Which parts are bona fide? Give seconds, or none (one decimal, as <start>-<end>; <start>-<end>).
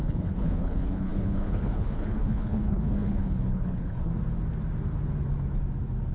4.1-6.1